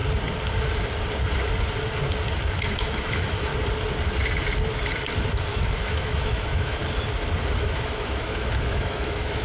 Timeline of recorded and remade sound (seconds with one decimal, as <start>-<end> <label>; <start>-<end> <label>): 0.0-2.7 recorded; 2.7-3.5 remade; 3.5-5.3 recorded; 5.3-6.8 remade; 6.8-7.6 recorded; 7.6-9.4 remade